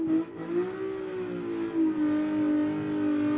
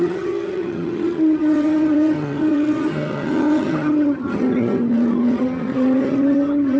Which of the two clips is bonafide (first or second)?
first